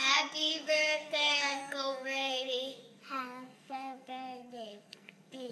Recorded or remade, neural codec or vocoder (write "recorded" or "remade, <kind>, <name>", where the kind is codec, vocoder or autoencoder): remade, codec, SNAC